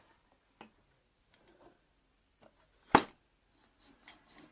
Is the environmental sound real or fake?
real